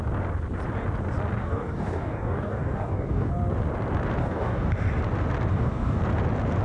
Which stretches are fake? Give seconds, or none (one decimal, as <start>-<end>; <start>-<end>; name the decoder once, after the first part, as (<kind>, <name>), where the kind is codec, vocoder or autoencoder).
1.4-3.3 (codec, DAC); 4.2-4.7; 5.5-6.0